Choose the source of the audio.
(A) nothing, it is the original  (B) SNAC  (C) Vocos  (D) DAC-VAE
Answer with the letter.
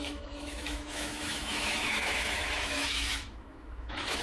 D